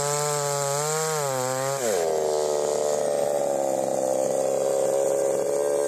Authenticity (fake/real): real